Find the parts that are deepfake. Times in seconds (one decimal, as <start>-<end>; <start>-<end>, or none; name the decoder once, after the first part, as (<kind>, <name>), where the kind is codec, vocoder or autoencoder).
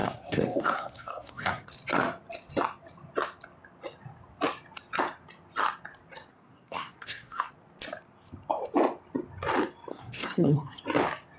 0.0-1.7 (codec, SNAC); 6.3-7.5; 9.9-10.8